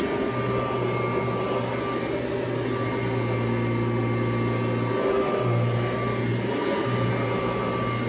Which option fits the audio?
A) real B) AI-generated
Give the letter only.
A